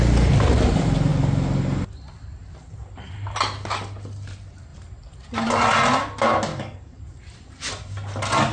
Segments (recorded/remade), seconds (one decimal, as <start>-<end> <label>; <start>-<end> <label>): 0.0-6.5 recorded; 6.5-7.0 remade; 7.0-8.5 recorded